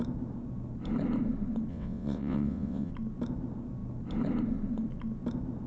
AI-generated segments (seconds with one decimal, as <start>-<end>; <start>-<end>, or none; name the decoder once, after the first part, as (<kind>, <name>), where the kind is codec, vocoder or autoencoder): 1.7-2.9 (vocoder, WaveNeXt)